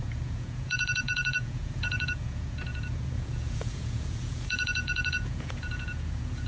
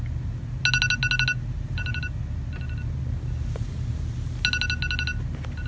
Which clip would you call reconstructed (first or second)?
first